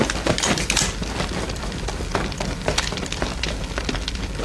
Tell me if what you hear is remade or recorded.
recorded